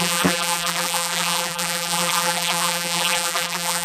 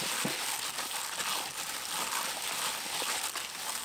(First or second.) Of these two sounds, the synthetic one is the first